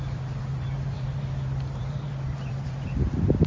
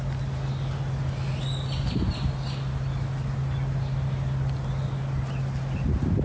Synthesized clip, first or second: first